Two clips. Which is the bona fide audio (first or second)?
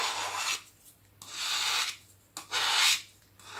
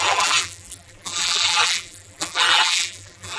first